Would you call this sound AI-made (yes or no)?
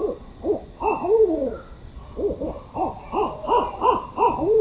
yes